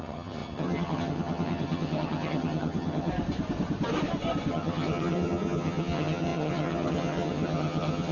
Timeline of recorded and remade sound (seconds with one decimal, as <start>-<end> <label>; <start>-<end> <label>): 0.0-3.1 remade; 3.1-4.5 recorded; 4.5-8.1 remade